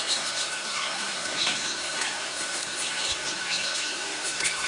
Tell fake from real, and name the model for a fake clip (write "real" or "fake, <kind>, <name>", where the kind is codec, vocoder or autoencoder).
fake, codec, SNAC